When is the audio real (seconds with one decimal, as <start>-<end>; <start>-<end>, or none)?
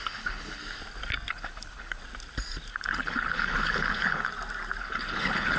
0.6-1.3; 2.0-2.7; 4.3-4.8